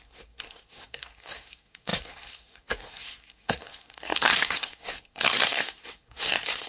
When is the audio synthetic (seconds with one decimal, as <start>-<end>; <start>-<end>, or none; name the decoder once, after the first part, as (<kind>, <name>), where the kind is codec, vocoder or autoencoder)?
0.0-6.7 (codec, SNAC)